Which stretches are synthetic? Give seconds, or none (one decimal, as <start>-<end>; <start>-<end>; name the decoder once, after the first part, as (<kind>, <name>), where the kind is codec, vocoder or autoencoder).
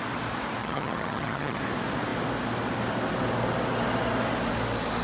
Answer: 0.6-1.6 (vocoder, HiFi-GAN)